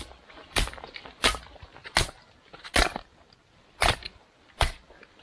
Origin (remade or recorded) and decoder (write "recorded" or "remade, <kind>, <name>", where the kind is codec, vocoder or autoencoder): recorded